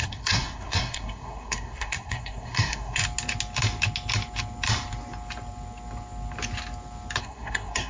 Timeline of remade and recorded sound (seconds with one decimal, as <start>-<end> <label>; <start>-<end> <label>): 0.0-3.0 remade; 3.0-7.2 recorded; 7.2-7.9 remade